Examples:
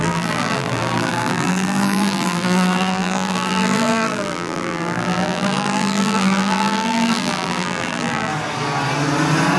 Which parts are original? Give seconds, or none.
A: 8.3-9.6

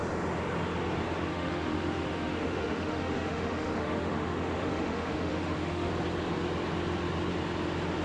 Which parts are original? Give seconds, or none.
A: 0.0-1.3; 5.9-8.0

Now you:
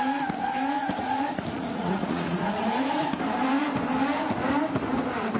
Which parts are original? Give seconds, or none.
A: 0.0-0.8; 3.1-5.4

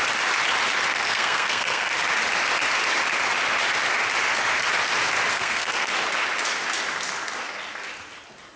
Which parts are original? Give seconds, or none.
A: 0.0-0.9; 1.9-5.3; 5.9-8.6

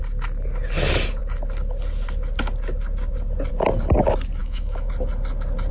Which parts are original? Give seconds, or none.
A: 0.0-4.4; 4.9-5.7

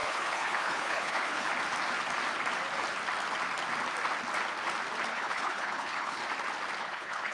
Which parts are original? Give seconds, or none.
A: 1.5-5.1; 6.2-6.8